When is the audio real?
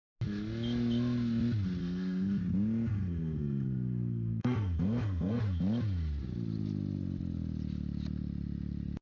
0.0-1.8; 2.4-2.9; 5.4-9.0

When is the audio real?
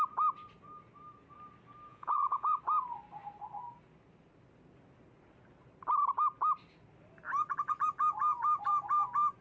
0.0-1.9; 2.6-9.4